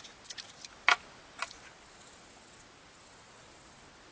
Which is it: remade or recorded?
recorded